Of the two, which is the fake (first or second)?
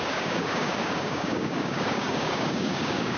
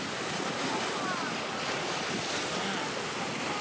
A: first